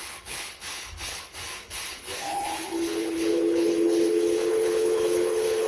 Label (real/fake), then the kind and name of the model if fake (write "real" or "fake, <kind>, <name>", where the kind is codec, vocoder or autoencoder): fake, codec, HILCodec